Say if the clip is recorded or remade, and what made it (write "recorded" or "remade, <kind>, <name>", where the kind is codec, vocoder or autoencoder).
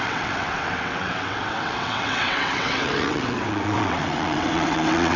remade, vocoder, WaveNeXt